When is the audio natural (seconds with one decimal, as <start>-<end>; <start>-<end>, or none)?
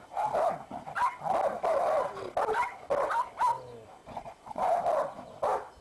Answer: 0.0-4.0; 4.8-5.8